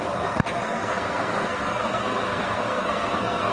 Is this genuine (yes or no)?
no